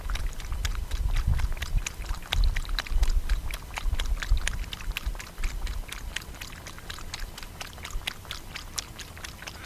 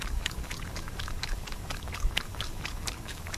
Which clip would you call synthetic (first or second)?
second